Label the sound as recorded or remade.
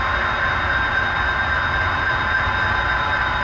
recorded